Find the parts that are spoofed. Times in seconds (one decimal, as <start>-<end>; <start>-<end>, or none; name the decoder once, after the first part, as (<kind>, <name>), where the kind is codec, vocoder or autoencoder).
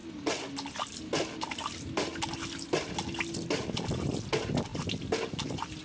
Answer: none